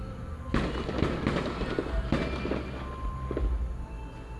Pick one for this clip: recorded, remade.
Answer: recorded